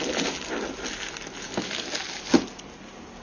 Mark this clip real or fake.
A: real